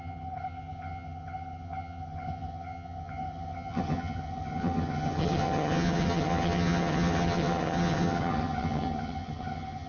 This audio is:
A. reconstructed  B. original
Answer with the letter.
A